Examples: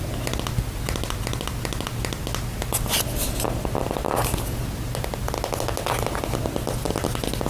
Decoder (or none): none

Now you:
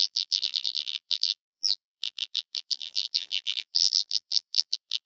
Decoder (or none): vocoder, BigVGAN v2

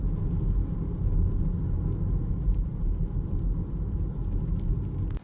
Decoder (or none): none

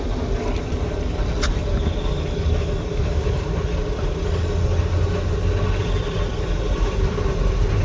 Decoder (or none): none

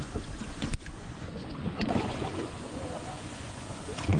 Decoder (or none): vocoder, Vocos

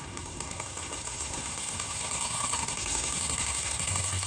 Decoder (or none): codec, SNAC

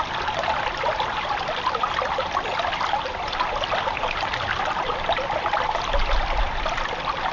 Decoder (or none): none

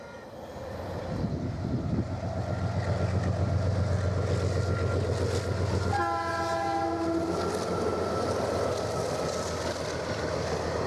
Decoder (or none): none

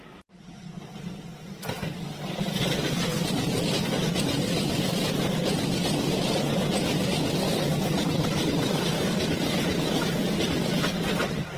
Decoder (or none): none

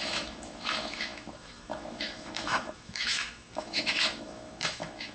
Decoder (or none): autoencoder, DAC-VAE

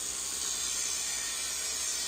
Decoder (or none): none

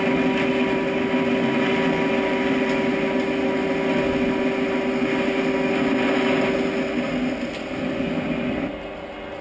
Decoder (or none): none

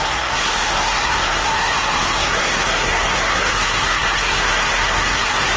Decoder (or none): codec, SNAC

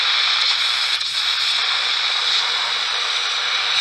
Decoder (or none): none